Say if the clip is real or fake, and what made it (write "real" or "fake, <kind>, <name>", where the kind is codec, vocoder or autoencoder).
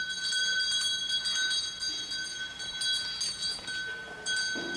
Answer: real